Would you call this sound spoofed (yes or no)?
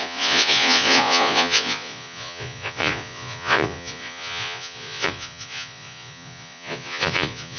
yes